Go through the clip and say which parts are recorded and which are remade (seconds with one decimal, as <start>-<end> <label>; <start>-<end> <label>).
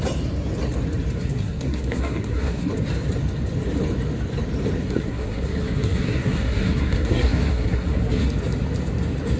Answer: 0.0-1.2 recorded; 1.2-2.7 remade; 2.7-4.8 recorded; 4.8-8.2 remade; 8.2-9.4 recorded